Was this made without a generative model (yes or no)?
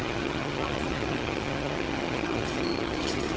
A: no